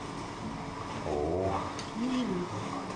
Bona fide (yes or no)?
yes